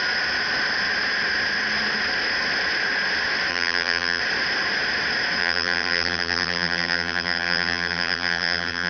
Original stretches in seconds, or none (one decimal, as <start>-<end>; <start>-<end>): 0.0-3.5; 4.2-5.4